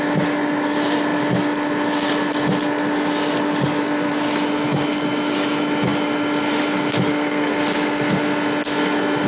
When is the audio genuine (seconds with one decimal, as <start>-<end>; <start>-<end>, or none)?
0.0-7.1; 7.6-9.3